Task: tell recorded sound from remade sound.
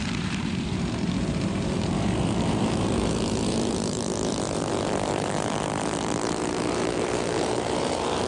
remade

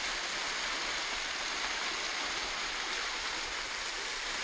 recorded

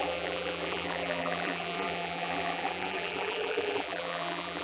remade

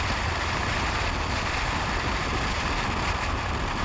recorded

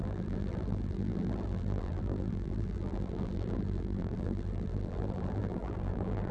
remade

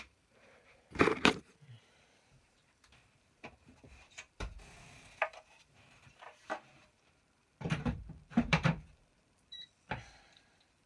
remade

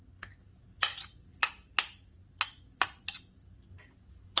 recorded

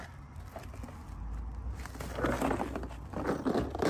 recorded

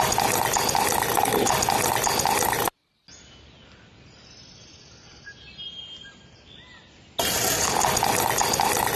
recorded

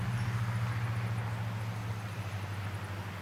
recorded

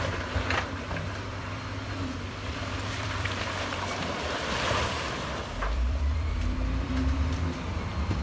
remade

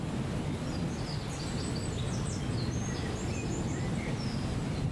recorded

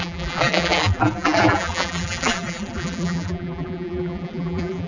remade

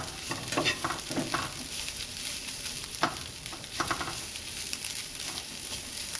remade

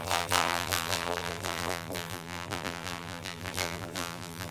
remade